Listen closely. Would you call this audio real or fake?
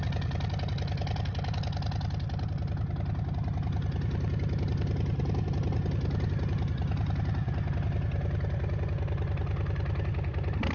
real